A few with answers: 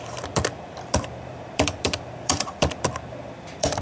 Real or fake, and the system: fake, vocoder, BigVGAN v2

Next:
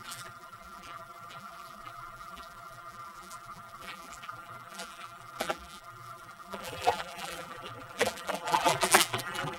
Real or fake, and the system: fake, vocoder, BigVGAN v2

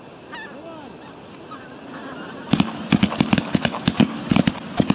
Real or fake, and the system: real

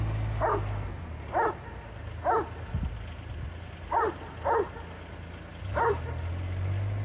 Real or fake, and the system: real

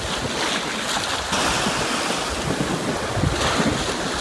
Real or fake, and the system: real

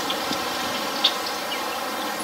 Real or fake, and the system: fake, vocoder, BigVGAN v2